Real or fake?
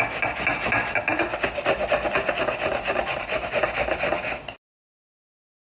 real